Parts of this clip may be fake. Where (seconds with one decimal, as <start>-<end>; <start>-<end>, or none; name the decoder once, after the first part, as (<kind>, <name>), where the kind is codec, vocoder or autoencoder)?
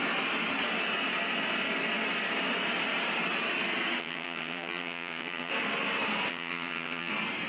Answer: 4.0-5.5 (vocoder, HiFi-GAN); 6.3-7.1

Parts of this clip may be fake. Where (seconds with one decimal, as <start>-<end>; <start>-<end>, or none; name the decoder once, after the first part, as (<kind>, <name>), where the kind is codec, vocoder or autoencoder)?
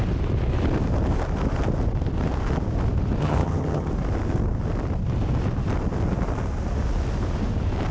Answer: 3.2-3.9 (vocoder, HiFi-GAN)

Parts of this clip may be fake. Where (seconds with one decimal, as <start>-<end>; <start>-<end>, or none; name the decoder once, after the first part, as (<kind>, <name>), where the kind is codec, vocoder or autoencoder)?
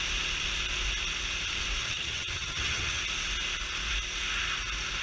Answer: 1.8-3.0 (vocoder, HiFi-GAN)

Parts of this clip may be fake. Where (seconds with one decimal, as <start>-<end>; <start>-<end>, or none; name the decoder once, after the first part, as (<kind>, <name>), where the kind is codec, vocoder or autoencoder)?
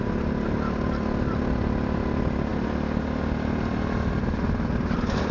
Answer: none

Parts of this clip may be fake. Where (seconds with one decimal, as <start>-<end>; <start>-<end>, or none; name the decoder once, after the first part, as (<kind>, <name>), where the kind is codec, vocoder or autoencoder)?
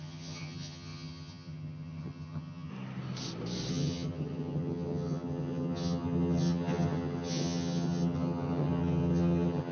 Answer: 0.0-2.7 (vocoder, HiFi-GAN); 3.7-9.7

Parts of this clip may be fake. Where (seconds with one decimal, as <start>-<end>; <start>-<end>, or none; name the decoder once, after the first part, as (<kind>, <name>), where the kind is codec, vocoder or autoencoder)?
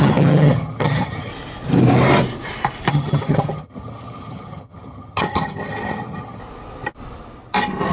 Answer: 0.0-1.3 (vocoder, HiFi-GAN); 2.9-6.4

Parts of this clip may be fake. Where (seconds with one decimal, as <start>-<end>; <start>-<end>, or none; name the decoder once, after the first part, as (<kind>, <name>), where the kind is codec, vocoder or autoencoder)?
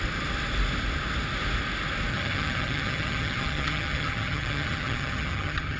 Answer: 2.1-5.8 (vocoder, HiFi-GAN)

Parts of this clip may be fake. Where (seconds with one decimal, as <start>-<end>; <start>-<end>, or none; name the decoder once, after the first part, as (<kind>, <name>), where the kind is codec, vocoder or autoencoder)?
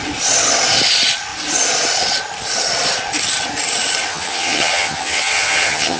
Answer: 4.1-6.0 (vocoder, HiFi-GAN)